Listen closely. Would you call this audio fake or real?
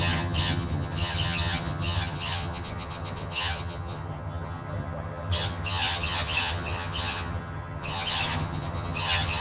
fake